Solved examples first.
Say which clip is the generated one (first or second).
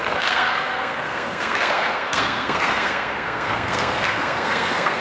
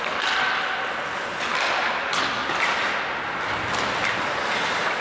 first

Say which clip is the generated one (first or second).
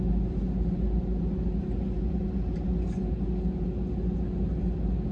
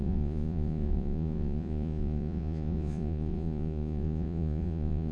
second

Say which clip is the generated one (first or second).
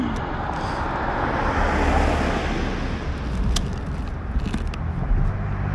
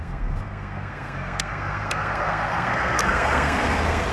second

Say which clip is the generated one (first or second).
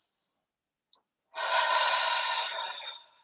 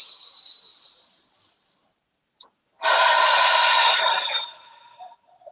second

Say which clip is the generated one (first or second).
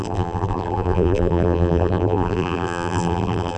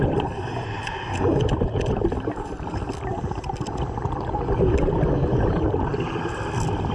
first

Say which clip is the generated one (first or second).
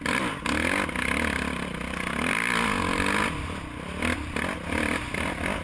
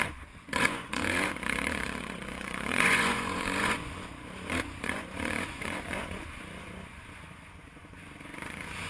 second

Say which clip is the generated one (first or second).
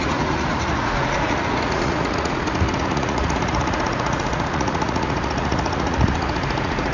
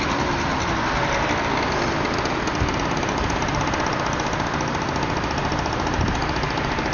first